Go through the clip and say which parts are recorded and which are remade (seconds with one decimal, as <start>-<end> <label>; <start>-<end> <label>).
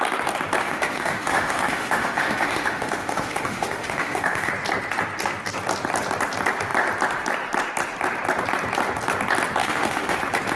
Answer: 0.0-0.6 recorded; 0.6-4.5 remade; 4.5-9.6 recorded; 9.6-10.2 remade; 10.2-10.6 recorded